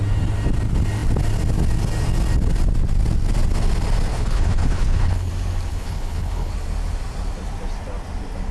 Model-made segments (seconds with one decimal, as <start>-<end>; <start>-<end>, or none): 4.1-5.3; 5.7-6.5